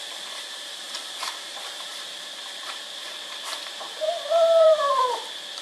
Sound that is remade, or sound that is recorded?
remade